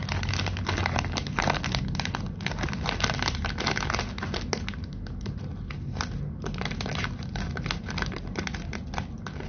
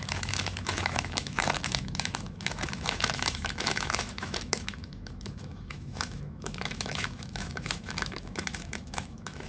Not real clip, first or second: second